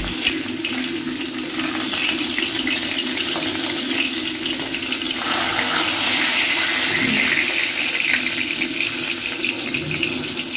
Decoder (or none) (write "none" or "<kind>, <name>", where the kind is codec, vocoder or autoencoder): none